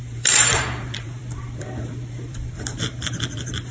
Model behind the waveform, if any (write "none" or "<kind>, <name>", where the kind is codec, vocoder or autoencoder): vocoder, BigVGAN v2